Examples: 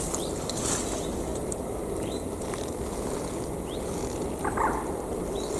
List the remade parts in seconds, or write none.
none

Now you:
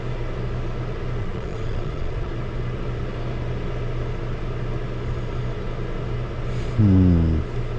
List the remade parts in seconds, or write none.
1.2-2.3 (vocoder, Vocos)

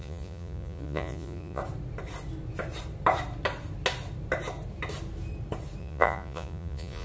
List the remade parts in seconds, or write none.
0.0-1.6 (vocoder, Vocos); 5.8-7.0

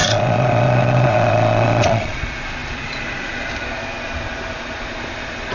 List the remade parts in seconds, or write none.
0.0-2.2 (vocoder, Vocos)

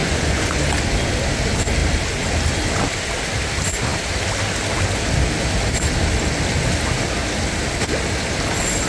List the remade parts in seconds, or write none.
0.0-0.6 (vocoder, Vocos)

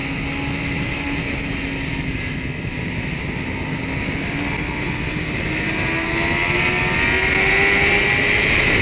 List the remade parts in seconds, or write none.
none